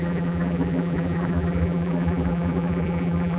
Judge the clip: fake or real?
fake